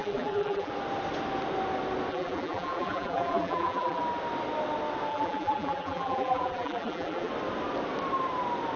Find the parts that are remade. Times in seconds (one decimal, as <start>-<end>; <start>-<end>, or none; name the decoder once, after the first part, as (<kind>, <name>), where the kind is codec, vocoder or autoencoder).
0.0-0.7 (vocoder, BigVGAN v2); 2.1-4.0; 5.1-7.3